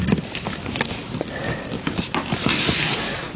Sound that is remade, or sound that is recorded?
recorded